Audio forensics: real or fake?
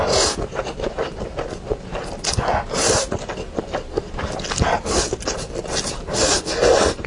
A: real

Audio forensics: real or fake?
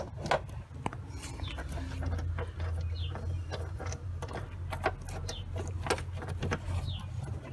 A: real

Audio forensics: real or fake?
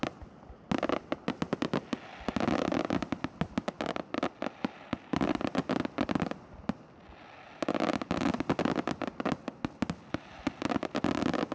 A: real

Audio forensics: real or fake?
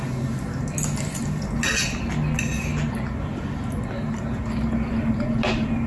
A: real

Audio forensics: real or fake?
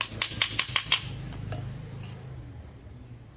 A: real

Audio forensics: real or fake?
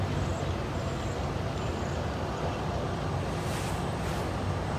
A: real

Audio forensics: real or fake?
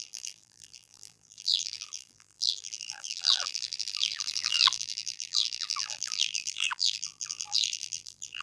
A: fake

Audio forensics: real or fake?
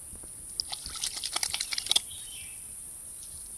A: real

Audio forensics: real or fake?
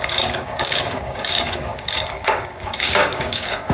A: fake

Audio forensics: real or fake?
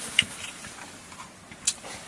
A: real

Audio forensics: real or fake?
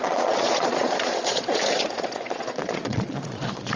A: fake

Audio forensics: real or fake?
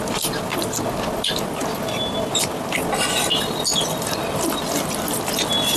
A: real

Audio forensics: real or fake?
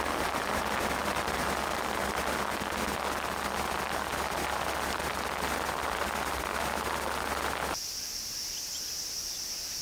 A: real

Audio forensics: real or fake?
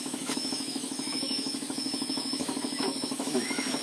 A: fake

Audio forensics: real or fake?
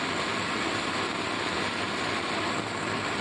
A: real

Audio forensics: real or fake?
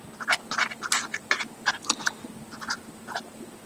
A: real